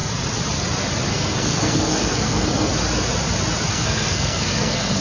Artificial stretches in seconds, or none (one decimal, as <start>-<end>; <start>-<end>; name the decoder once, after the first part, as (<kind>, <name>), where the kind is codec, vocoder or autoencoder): 1.1-2.7 (codec, SNAC); 3.7-5.0